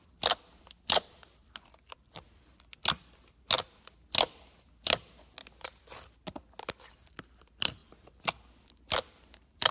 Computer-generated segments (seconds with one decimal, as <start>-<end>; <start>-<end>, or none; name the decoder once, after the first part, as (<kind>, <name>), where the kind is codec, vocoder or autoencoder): 0.0-2.8 (vocoder, BigVGAN v2); 6.9-9.7